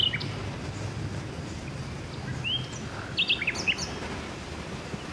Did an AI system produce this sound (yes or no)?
no